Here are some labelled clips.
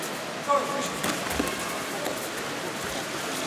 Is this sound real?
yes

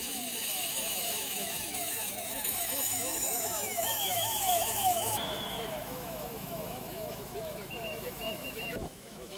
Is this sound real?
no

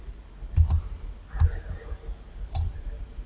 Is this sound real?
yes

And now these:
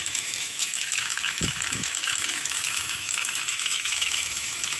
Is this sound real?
no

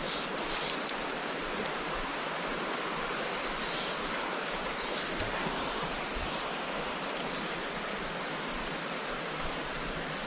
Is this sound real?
yes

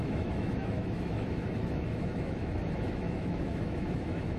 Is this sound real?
no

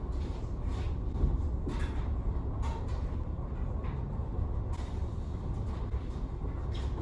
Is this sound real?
yes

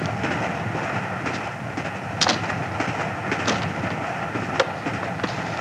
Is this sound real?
yes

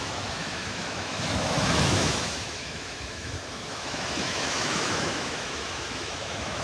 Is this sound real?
no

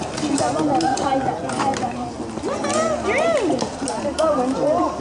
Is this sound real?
yes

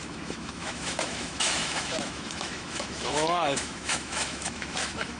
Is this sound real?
no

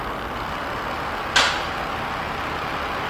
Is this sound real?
yes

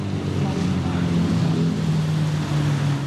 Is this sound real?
yes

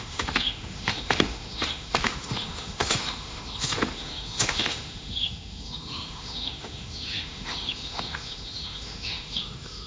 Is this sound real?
no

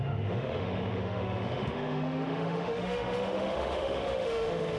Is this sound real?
no